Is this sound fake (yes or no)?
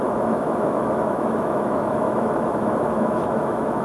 yes